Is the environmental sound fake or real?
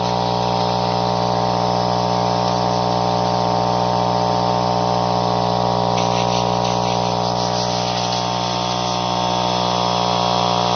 real